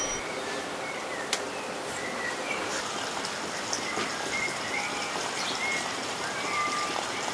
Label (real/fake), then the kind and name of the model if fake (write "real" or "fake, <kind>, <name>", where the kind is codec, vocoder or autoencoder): real